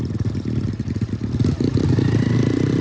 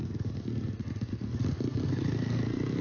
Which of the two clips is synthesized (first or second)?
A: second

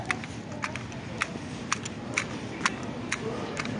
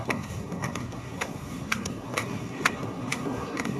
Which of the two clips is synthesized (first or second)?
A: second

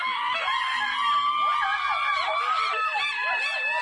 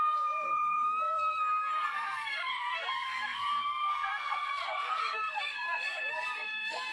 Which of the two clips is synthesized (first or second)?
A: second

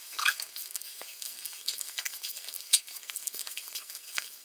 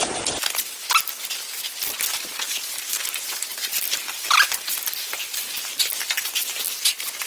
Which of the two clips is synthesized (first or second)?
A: first